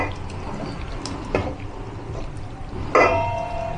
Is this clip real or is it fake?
real